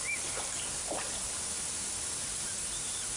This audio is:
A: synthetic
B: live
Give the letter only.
B